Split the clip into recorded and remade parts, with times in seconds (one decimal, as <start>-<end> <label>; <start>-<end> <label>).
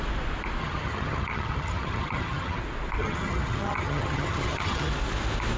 0.0-0.6 recorded; 0.6-2.6 remade; 2.6-3.0 recorded; 3.0-4.9 remade; 4.9-5.6 recorded